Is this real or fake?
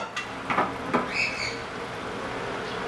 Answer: real